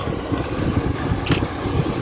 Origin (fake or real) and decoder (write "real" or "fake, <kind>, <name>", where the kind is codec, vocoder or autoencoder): real